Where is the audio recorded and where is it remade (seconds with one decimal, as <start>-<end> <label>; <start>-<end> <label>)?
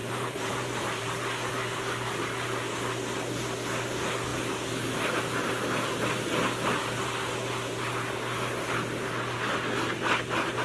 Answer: 0.0-1.5 remade; 1.5-10.6 recorded